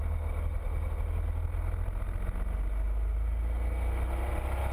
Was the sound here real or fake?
real